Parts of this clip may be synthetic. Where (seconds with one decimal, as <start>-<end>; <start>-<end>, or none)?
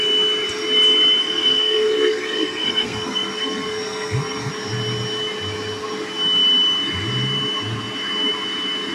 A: 1.2-4.5